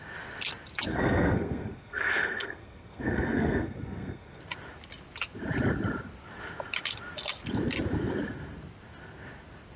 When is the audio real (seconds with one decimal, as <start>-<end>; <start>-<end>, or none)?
0.0-0.9; 4.4-9.8